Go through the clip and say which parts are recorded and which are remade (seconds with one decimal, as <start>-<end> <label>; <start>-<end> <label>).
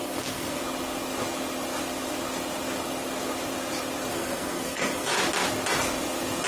0.0-0.6 remade; 0.6-4.1 recorded; 4.1-5.1 remade; 5.1-6.5 recorded